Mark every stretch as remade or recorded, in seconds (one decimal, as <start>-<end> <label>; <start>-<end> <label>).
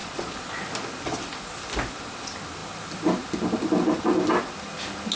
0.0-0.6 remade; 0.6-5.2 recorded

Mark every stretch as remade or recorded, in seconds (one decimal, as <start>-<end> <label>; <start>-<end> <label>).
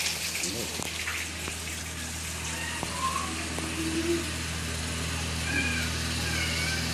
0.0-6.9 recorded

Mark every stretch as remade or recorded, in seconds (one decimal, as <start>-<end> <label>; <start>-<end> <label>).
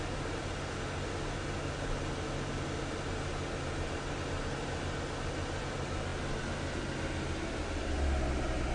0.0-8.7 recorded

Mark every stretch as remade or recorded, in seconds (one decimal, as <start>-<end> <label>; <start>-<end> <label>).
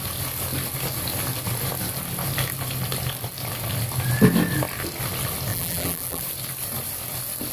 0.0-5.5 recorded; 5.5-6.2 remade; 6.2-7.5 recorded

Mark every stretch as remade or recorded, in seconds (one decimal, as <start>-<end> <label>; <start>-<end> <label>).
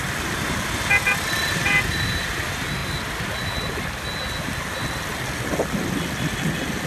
0.0-6.9 recorded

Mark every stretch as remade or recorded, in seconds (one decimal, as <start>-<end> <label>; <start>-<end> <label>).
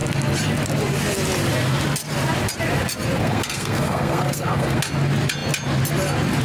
0.0-3.2 recorded; 3.2-4.8 remade; 4.8-6.4 recorded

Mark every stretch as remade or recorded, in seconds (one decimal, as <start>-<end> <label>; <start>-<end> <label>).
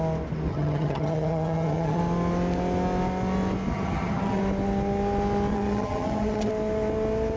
0.0-0.5 recorded; 0.5-2.0 remade; 2.0-3.7 recorded; 3.7-4.4 remade; 4.4-5.5 recorded; 5.5-6.5 remade; 6.5-7.4 recorded